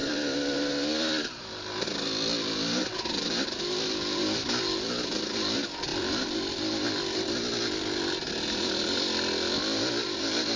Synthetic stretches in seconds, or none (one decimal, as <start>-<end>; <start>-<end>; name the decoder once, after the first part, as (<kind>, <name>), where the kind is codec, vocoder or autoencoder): none